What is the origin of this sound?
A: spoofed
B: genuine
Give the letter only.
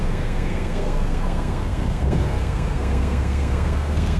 A